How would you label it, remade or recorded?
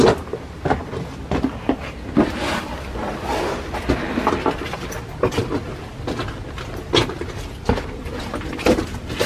recorded